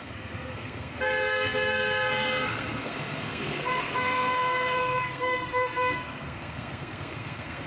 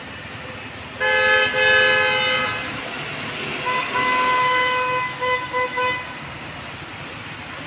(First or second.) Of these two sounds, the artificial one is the first